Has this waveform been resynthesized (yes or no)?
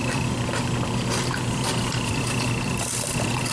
yes